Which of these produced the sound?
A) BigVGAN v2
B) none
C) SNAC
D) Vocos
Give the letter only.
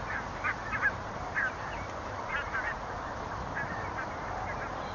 A